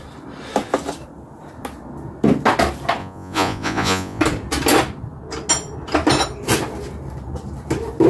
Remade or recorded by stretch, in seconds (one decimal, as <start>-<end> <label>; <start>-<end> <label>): 0.0-3.0 recorded; 3.0-4.2 remade; 4.2-8.1 recorded